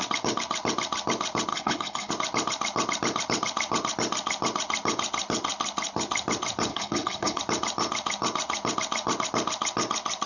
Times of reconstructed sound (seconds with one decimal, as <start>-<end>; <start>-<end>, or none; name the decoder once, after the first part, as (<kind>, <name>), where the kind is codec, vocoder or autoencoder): 1.5-2.1 (codec, HILCodec); 6.7-7.4